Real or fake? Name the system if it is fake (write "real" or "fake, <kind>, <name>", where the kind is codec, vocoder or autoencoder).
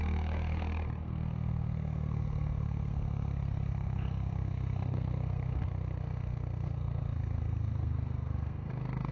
fake, codec, SNAC